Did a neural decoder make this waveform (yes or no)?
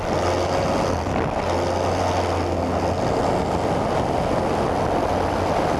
no